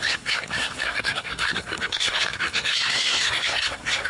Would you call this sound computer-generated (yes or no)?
yes